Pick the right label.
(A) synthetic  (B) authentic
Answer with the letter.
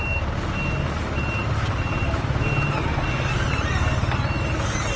B